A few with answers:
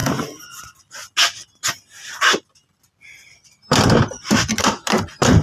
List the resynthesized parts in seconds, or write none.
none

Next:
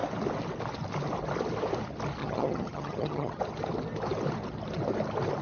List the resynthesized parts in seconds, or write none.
2.2-3.4 (vocoder, HiFi-GAN)

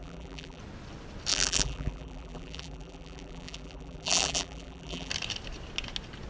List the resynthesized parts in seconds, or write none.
0.0-0.6 (vocoder, BigVGAN v2); 1.3-5.1